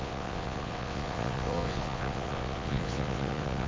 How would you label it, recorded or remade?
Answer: remade